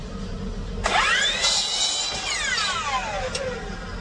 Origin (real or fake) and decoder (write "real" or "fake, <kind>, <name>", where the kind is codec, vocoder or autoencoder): real